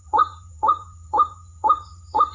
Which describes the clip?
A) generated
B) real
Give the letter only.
A